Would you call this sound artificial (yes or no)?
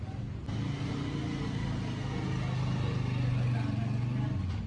no